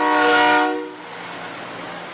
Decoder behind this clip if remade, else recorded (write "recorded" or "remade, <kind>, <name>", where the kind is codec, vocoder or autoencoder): recorded